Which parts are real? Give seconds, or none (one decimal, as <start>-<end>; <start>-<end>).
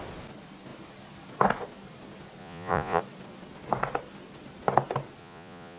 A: 0.0-2.4; 3.0-5.2